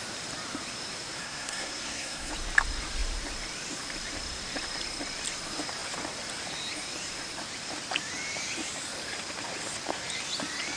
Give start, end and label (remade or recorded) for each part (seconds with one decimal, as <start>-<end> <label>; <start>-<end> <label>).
0.0-1.2 recorded; 1.2-2.3 remade; 2.3-10.8 recorded